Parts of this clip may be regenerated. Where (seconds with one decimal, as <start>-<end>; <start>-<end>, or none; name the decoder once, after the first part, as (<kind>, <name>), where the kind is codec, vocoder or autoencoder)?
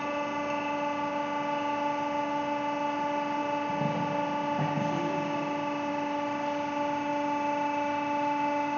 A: none